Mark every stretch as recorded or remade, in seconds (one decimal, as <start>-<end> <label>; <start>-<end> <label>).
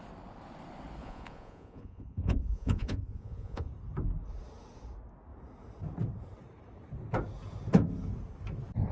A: 0.0-1.0 recorded; 1.0-3.7 remade; 3.7-8.9 recorded